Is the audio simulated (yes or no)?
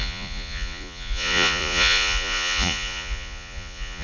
yes